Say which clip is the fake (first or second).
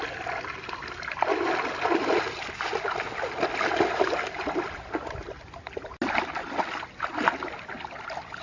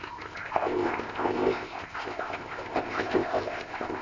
second